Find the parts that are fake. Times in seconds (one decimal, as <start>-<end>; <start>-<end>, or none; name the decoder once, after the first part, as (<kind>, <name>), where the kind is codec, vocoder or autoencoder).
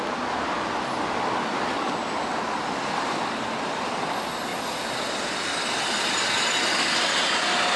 none